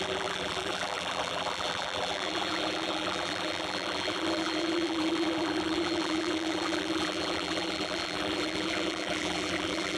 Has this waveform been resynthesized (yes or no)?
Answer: yes